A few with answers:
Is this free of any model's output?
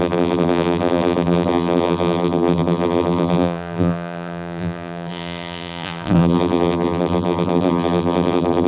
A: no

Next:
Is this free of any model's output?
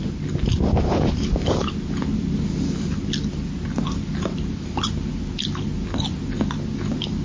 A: yes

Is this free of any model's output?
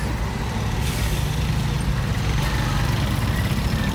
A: yes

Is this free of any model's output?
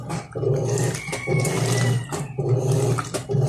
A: yes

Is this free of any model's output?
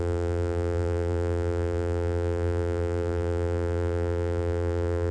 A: no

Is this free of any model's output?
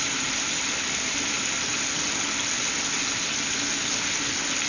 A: yes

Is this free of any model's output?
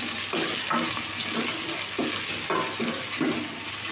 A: yes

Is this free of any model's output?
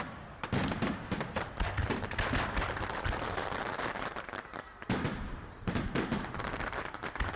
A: no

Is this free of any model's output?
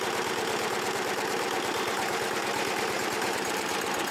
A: no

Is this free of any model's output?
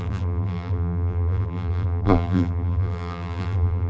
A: no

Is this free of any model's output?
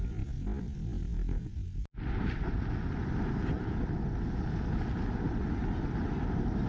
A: yes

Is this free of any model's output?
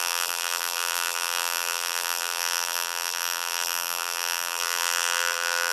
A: no